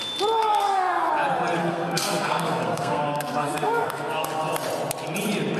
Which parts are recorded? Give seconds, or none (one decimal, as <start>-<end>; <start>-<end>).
0.0-0.4; 1.1-1.6; 4.3-5.6